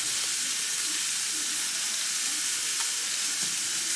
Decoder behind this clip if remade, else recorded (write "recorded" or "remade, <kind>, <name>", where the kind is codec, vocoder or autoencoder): recorded